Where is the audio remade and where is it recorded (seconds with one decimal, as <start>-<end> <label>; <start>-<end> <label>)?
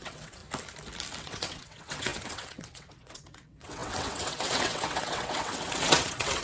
0.0-0.4 remade; 0.4-1.2 recorded; 1.2-6.4 remade